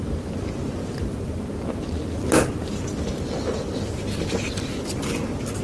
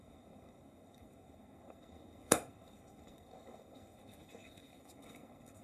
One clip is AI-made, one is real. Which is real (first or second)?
first